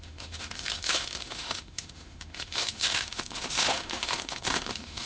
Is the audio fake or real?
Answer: fake